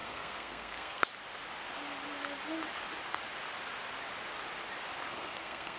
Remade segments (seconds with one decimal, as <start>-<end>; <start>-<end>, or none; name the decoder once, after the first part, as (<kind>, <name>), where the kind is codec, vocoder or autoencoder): 0.0-1.0 (codec, SNAC); 5.1-5.8